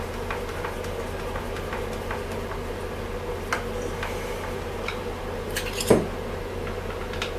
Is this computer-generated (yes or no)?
no